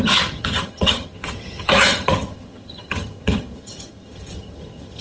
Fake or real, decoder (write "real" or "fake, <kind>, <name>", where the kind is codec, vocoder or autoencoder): fake, vocoder, HiFi-GAN